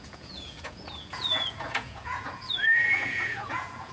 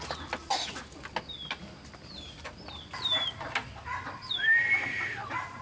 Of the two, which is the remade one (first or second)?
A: first